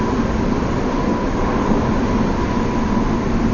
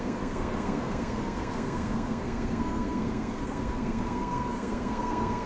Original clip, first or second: first